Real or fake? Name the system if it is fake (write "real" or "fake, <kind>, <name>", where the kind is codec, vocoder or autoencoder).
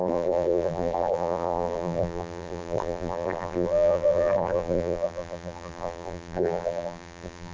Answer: fake, vocoder, BigVGAN v2